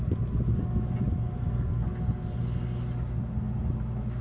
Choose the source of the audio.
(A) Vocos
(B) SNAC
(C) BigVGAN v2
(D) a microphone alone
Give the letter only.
D